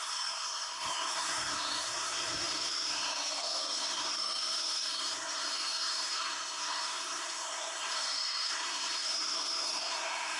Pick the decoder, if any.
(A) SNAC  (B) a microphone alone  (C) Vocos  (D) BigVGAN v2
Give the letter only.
A